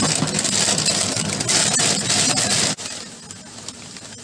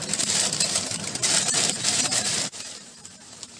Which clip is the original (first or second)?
first